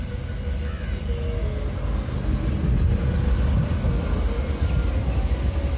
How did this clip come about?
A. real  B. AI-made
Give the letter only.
A